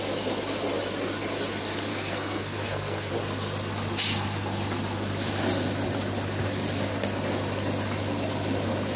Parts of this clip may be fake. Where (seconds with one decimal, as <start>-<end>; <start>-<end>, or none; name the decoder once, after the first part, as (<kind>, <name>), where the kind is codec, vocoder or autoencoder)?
1.9-3.1 (codec, SNAC)